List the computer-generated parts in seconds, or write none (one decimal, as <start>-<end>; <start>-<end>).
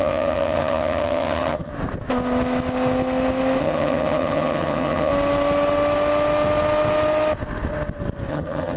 0.0-1.7; 3.6-5.1; 8.3-8.8